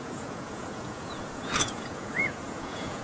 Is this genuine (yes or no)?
no